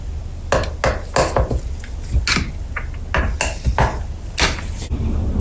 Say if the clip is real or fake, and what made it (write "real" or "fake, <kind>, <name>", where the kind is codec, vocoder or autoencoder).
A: real